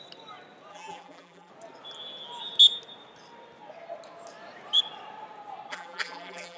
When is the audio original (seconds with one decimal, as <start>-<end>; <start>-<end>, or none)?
0.0-0.7; 1.5-5.7